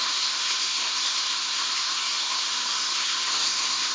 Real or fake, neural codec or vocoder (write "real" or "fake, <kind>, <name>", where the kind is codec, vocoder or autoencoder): fake, codec, SNAC